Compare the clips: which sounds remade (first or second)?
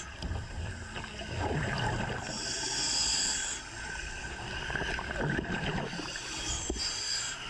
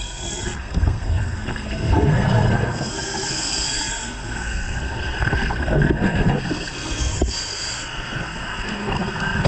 second